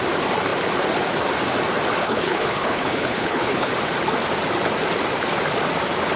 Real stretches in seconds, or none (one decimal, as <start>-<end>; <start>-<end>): 0.0-2.0; 3.7-6.2